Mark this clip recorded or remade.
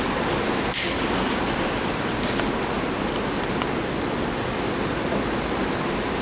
recorded